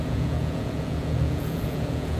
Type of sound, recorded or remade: remade